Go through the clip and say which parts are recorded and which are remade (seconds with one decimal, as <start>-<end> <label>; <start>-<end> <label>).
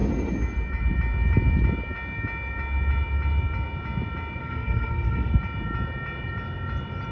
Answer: 0.0-4.4 recorded; 4.4-5.3 remade; 5.3-7.1 recorded